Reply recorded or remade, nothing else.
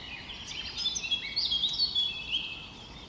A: recorded